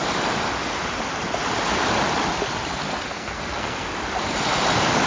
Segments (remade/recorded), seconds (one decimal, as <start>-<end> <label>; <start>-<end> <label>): 0.0-3.1 recorded; 3.1-3.9 remade; 3.9-5.1 recorded